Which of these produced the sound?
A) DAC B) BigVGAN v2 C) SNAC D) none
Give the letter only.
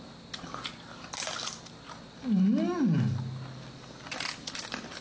D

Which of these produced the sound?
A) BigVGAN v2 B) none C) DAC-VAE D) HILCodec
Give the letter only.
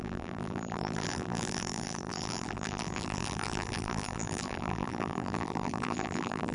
A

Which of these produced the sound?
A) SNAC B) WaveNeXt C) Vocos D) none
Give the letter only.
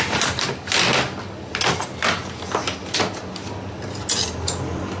D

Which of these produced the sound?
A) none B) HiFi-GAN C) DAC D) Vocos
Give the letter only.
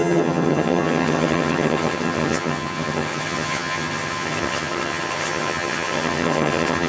B